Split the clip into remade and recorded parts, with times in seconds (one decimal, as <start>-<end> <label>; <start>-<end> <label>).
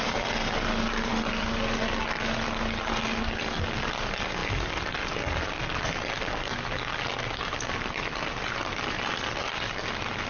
0.0-10.3 recorded